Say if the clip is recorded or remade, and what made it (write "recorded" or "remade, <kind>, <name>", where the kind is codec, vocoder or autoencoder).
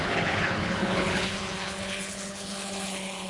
remade, codec, HILCodec